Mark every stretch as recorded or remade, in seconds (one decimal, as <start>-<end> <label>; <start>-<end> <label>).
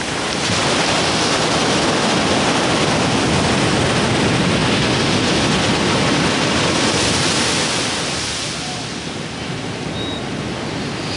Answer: 0.0-11.2 recorded